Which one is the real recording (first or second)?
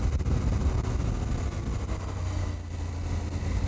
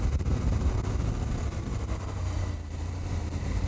first